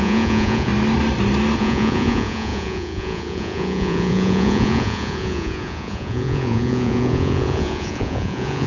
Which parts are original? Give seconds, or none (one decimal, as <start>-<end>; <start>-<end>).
0.7-1.6